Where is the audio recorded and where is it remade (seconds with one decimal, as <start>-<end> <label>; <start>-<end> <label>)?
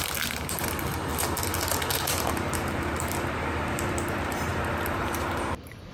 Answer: 0.0-1.1 remade; 1.1-1.9 recorded; 1.9-5.9 remade